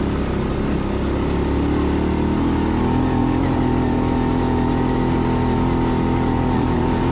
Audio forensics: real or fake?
real